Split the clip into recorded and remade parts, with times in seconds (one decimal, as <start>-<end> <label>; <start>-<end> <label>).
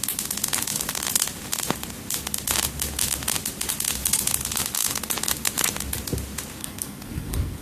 0.0-6.6 recorded; 6.6-7.6 remade